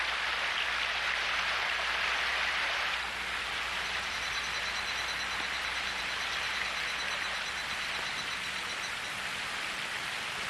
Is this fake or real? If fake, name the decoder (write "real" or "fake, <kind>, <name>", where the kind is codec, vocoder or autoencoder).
fake, vocoder, BigVGAN v2